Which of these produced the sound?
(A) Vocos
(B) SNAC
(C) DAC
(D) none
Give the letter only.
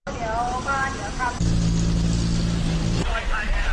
D